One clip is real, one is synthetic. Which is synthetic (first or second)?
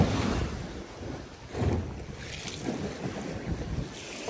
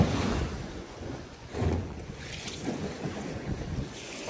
second